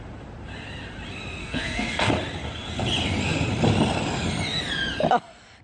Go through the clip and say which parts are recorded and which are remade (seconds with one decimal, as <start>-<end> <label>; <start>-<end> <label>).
0.0-1.4 recorded; 1.4-2.1 remade; 2.1-5.6 recorded